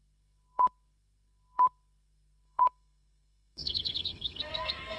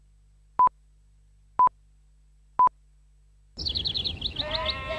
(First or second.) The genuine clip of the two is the second